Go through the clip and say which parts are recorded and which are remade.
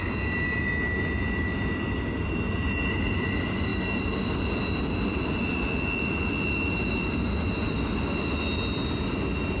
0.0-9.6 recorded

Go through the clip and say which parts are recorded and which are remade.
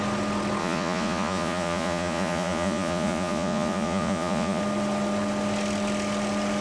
0.0-0.6 recorded; 0.6-4.6 remade; 4.6-6.6 recorded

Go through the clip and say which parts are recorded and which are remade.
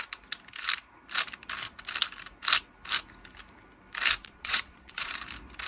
0.0-4.2 recorded; 4.2-5.1 remade; 5.1-5.7 recorded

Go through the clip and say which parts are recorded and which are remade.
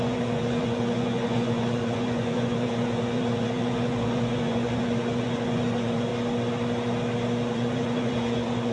0.0-6.1 remade; 6.1-7.5 recorded; 7.5-8.7 remade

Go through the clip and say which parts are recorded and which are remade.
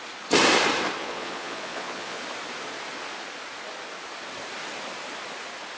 0.0-1.0 recorded; 1.0-2.2 remade; 2.2-5.8 recorded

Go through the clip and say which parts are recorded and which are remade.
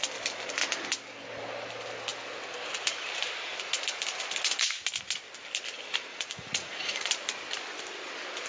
0.0-6.1 recorded; 6.1-7.1 remade; 7.1-8.5 recorded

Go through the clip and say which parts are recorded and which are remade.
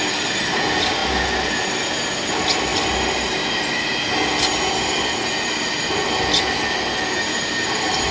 0.0-8.1 recorded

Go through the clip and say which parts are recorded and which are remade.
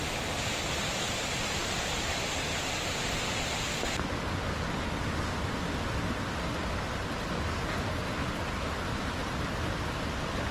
0.0-10.5 recorded